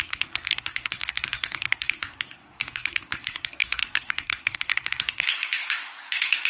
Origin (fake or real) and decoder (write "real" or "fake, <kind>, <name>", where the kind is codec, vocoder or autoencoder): fake, codec, SNAC